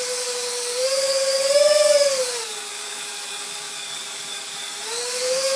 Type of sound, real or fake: fake